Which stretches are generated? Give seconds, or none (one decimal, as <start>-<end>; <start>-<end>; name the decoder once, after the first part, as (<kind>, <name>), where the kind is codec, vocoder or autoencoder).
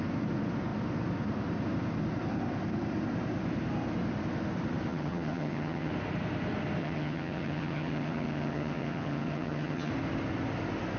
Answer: 4.9-5.9 (vocoder, HiFi-GAN); 6.8-9.9